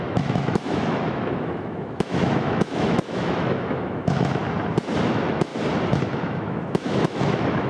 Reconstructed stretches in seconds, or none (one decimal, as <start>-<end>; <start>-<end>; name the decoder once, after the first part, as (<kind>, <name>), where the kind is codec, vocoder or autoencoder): 0.0-4.4 (autoencoder, DAC-VAE); 5.1-5.5; 6.0-7.7